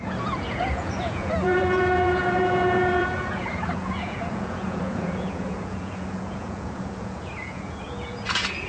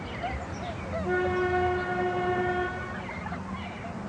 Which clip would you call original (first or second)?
second